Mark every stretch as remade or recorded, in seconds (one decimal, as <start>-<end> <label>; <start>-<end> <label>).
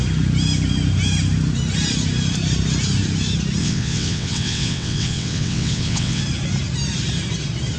0.0-3.6 recorded; 3.6-6.2 remade; 6.2-7.8 recorded